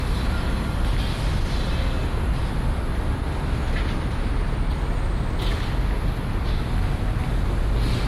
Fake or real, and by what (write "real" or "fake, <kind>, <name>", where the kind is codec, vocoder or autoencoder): real